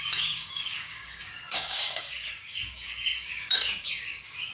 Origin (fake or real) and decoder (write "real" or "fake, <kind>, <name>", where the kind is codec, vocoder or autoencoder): fake, codec, DAC